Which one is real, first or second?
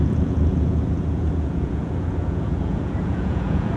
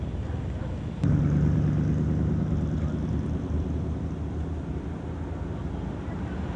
second